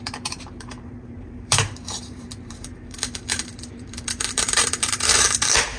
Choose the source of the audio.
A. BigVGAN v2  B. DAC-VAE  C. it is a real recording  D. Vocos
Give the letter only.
A